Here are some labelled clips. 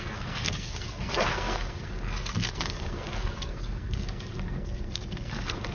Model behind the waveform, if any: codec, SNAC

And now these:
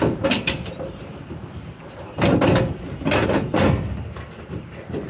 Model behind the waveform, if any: vocoder, BigVGAN v2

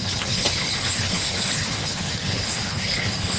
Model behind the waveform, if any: codec, HILCodec